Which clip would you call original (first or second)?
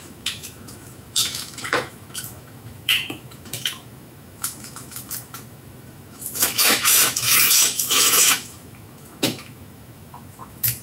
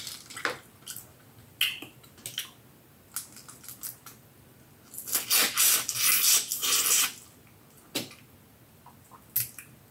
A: second